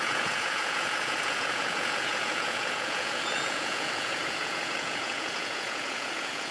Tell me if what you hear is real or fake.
fake